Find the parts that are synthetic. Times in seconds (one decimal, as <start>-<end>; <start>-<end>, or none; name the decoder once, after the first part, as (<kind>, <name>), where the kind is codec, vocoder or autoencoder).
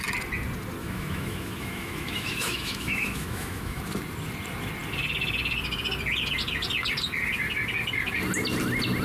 0.8-3.8 (autoencoder, DAC-VAE)